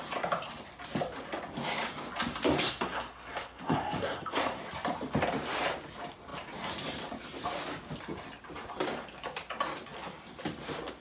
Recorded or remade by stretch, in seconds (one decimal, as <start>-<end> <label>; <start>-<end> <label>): 0.0-2.6 recorded; 2.6-4.6 remade; 4.6-11.0 recorded